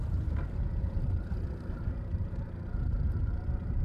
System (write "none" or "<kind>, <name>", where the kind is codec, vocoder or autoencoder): none